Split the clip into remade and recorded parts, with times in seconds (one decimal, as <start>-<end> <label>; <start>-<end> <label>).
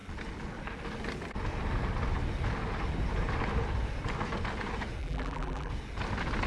0.0-5.0 recorded; 5.0-5.7 remade; 5.7-6.5 recorded